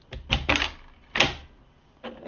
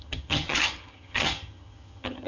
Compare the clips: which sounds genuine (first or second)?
first